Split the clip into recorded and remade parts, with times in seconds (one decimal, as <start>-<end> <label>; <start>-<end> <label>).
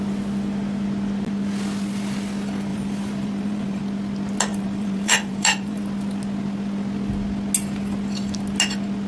0.0-2.7 recorded; 2.7-3.8 remade; 3.8-4.5 recorded; 4.5-5.8 remade; 5.8-9.1 recorded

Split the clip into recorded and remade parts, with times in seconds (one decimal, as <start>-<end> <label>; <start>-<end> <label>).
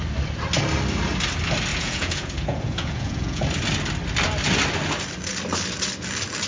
0.0-1.7 recorded; 1.7-3.4 remade; 3.4-6.5 recorded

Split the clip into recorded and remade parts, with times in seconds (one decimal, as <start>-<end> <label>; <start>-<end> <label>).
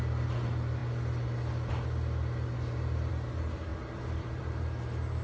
0.0-3.7 recorded; 3.7-4.6 remade; 4.6-5.2 recorded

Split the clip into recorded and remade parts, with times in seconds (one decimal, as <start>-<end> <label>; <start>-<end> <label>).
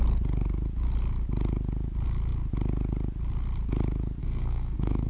0.0-4.2 recorded; 4.2-5.1 remade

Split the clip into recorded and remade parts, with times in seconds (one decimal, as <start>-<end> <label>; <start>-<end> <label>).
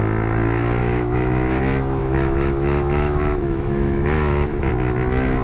0.0-0.8 recorded; 0.8-1.6 remade; 1.6-2.0 recorded; 2.0-4.7 remade; 4.7-5.4 recorded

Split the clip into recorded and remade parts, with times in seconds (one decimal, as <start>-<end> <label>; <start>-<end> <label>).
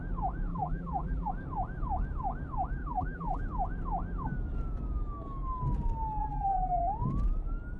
0.0-0.5 recorded; 0.5-1.3 remade; 1.3-2.8 recorded; 2.8-3.4 remade; 3.4-6.2 recorded; 6.2-6.8 remade; 6.8-7.8 recorded